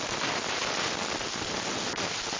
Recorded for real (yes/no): yes